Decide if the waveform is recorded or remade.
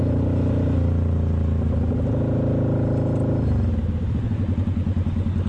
recorded